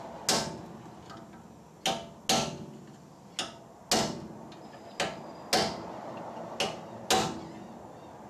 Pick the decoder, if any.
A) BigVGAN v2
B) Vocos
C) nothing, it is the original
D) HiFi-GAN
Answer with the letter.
C